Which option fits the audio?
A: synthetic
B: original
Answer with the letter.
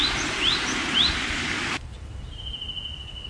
B